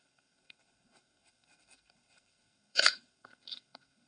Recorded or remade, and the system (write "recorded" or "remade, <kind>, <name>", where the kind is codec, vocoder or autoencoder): remade, codec, SNAC